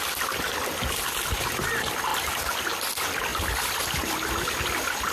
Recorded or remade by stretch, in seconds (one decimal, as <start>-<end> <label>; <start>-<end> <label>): 0.0-5.1 recorded